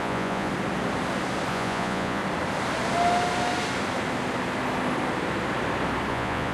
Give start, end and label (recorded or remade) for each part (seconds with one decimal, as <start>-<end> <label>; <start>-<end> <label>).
0.0-0.5 remade; 0.5-1.5 recorded; 1.5-2.2 remade; 2.2-6.1 recorded; 6.1-6.5 remade